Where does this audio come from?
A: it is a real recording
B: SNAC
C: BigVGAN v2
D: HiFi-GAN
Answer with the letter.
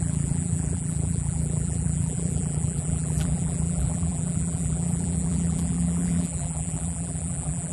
C